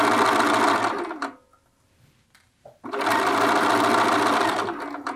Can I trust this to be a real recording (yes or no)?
yes